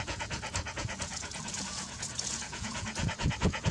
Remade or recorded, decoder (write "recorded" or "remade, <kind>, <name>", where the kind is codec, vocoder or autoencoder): remade, vocoder, Vocos